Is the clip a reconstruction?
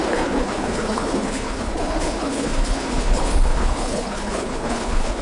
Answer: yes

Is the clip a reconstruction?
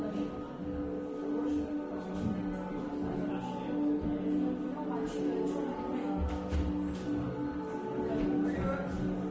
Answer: no